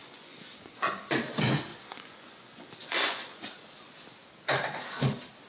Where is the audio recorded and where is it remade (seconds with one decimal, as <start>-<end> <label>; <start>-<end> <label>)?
0.0-1.0 remade; 1.0-1.7 recorded; 1.7-3.5 remade; 3.5-5.5 recorded